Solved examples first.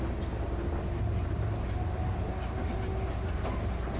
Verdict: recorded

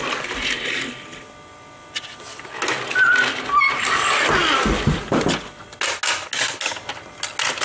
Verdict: recorded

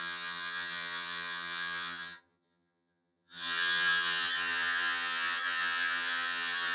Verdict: remade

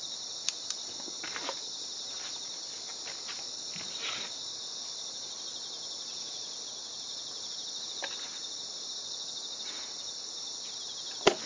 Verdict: recorded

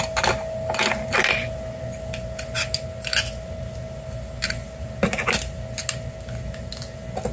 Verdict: recorded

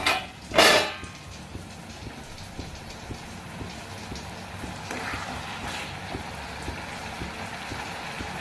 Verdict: recorded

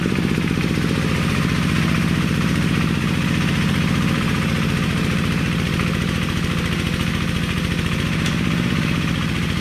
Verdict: remade